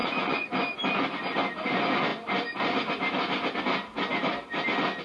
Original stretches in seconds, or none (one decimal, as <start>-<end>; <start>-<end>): 0.5-5.0